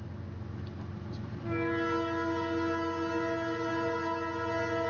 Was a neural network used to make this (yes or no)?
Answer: no